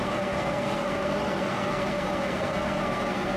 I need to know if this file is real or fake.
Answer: fake